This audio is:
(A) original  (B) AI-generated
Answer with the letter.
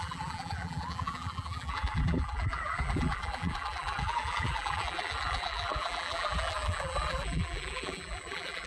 B